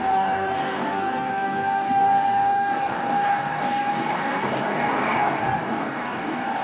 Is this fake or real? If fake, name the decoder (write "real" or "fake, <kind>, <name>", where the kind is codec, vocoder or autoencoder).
fake, codec, DAC